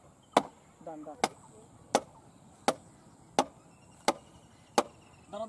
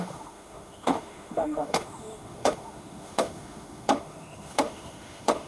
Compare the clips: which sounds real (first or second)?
first